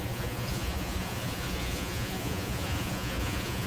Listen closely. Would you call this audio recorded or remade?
remade